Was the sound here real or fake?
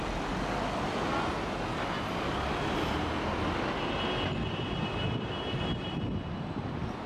real